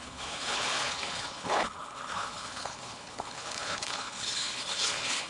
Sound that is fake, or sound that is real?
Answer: fake